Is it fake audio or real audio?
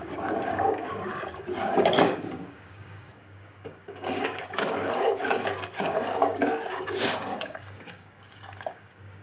fake